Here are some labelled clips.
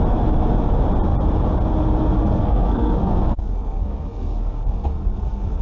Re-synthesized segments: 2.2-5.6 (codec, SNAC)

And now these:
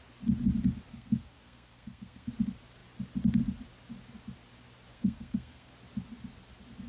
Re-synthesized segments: 0.9-2.3 (codec, SNAC); 4.9-5.7

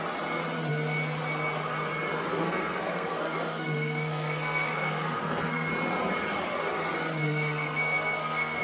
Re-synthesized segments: 2.3-5.7 (codec, SNAC); 7.2-8.6

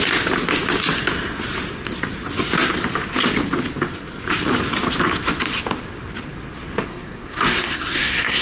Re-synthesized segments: 6.9-8.4 (codec, SNAC)